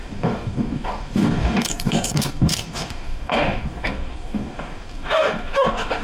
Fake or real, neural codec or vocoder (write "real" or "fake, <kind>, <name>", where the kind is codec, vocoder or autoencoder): fake, codec, DAC